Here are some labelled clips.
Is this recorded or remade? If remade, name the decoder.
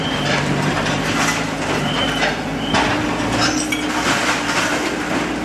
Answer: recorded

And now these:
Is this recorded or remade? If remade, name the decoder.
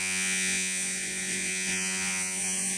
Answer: remade, vocoder, Vocos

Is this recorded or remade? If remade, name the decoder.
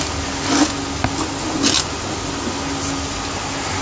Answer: recorded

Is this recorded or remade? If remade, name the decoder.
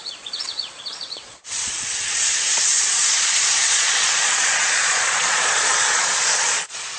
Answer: remade, vocoder, Vocos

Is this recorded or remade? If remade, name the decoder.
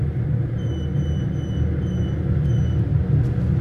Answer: recorded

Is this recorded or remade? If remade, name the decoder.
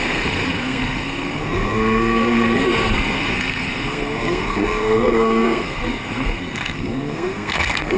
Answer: remade, codec, SNAC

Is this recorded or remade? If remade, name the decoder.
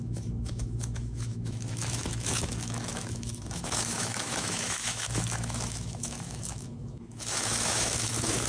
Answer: remade, autoencoder, DAC-VAE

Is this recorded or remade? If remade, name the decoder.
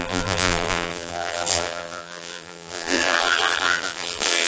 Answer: remade, vocoder, BigVGAN v2